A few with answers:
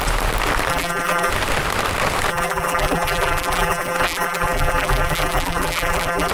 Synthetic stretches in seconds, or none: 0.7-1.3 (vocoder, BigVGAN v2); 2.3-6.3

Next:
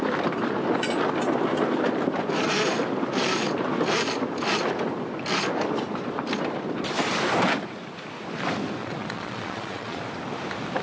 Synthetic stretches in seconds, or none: 8.8-10.0 (vocoder, Vocos)